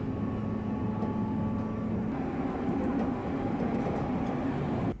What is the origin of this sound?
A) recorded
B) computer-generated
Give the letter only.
A